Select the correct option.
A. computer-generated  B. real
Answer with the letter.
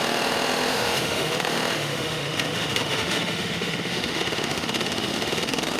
A